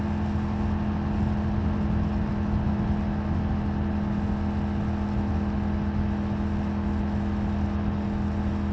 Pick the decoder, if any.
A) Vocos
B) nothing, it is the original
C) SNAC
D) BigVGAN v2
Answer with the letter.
B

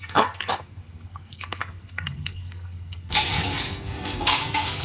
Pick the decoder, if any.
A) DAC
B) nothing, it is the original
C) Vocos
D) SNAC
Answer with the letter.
D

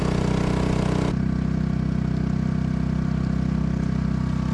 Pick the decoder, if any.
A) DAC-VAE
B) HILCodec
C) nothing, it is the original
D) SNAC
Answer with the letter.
C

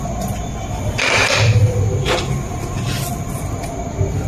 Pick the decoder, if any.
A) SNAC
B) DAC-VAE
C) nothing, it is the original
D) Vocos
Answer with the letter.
C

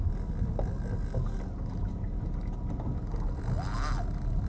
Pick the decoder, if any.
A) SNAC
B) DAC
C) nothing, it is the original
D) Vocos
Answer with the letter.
C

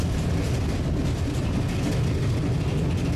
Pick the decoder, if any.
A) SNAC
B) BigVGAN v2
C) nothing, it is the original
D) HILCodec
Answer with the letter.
C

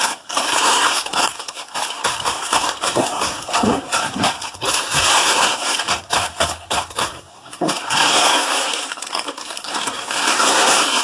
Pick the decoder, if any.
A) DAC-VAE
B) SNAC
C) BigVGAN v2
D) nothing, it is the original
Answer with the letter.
B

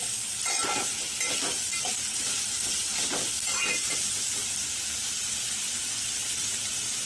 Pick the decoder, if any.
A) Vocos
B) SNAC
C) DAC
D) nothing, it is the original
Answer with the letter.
D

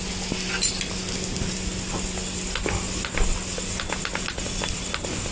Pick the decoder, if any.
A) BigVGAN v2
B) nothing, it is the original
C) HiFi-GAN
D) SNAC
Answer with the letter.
B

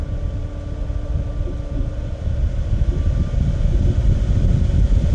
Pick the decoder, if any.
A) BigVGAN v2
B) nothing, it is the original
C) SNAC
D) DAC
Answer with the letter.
B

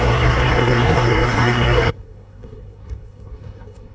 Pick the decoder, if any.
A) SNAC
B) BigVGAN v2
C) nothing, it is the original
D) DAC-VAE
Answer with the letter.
A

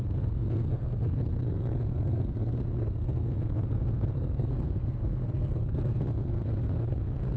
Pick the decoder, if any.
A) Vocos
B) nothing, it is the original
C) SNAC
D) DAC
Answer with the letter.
C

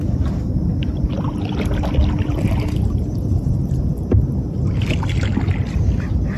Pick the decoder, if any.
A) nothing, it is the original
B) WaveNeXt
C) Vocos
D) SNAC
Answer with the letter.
A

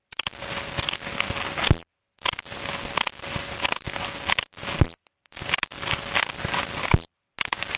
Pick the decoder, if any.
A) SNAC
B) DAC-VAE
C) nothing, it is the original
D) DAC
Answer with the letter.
C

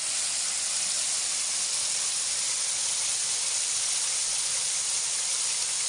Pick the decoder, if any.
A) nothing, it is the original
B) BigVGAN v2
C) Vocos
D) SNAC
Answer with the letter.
A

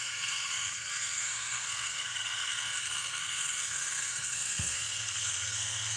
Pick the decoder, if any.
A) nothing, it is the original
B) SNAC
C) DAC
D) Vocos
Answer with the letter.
B